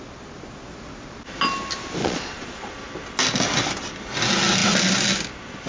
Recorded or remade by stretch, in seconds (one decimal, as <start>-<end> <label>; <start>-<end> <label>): 0.0-2.0 recorded; 2.0-2.7 remade; 2.7-5.7 recorded